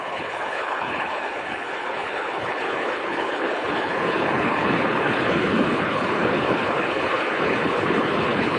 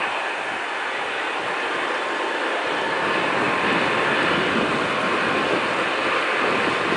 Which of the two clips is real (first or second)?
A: second